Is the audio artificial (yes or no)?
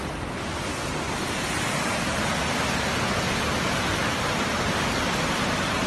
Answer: no